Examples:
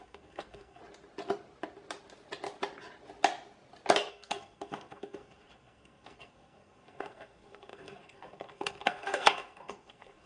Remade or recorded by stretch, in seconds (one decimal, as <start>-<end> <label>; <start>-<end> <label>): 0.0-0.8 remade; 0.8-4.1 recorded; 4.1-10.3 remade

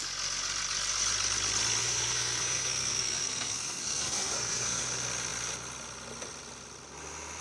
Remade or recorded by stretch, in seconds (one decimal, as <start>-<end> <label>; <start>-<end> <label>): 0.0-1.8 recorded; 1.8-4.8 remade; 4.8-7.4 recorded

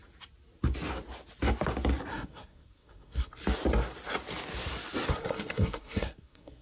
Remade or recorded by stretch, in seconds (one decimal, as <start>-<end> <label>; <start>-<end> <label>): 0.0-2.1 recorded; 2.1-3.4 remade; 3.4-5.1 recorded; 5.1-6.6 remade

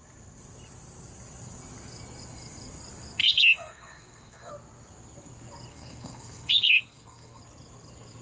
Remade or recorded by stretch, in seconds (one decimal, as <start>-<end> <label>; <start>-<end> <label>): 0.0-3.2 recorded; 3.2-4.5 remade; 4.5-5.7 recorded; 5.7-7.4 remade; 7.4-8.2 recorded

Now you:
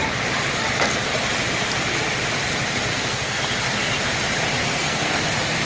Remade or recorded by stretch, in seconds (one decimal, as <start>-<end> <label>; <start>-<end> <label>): 0.0-2.9 recorded; 2.9-3.4 remade; 3.4-4.6 recorded; 4.6-5.2 remade; 5.2-5.7 recorded

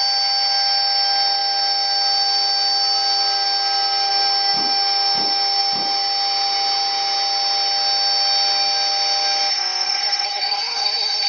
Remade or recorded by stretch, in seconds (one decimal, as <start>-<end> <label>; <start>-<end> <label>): 0.0-9.5 recorded; 9.5-11.3 remade